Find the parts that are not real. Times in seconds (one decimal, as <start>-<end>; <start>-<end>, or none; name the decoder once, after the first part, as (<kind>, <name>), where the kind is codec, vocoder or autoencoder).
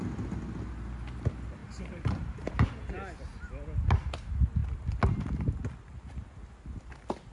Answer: 1.6-2.7 (vocoder, BigVGAN v2)